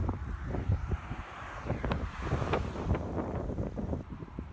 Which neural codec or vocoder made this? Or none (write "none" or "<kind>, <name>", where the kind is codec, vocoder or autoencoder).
vocoder, BigVGAN v2